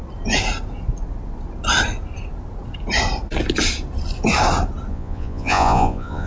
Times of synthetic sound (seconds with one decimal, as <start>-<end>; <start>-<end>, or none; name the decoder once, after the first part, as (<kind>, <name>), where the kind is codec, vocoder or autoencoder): 4.9-6.3 (vocoder, Vocos)